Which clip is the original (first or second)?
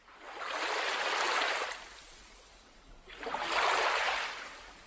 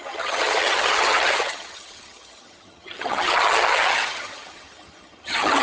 first